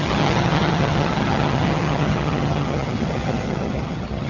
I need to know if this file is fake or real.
fake